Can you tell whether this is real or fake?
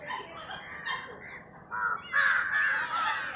real